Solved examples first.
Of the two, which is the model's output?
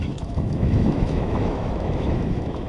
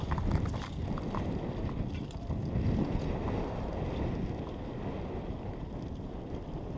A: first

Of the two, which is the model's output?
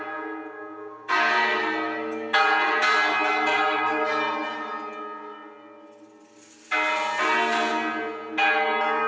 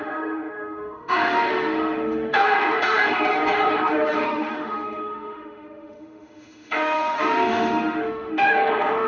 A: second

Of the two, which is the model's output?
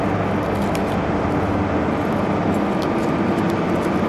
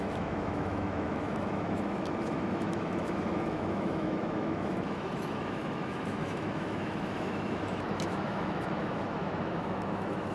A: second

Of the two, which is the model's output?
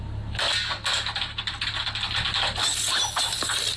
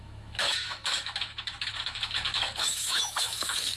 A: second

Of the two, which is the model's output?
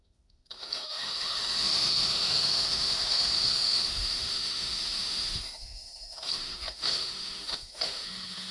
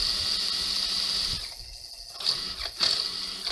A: first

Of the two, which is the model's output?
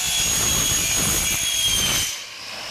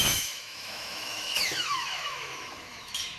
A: second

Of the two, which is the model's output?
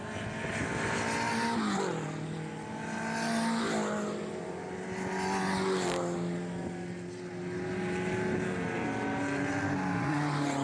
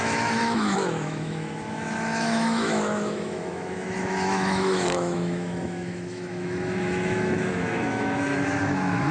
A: second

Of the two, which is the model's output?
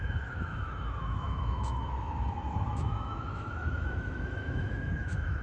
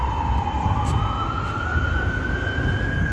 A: first